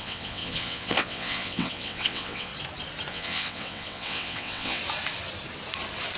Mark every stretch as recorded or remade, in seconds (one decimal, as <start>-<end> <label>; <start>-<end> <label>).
0.0-2.5 remade; 2.5-3.1 recorded; 3.1-4.8 remade; 4.8-6.2 recorded